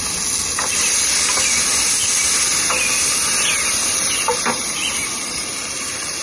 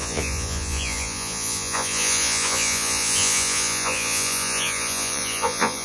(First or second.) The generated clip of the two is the second